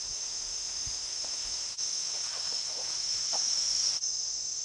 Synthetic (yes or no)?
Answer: yes